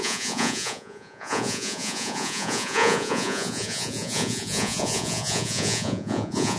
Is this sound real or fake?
fake